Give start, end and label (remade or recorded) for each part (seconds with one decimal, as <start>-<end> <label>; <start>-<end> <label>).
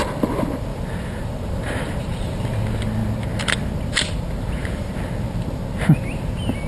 0.0-0.7 recorded; 0.7-2.4 remade; 2.4-6.7 recorded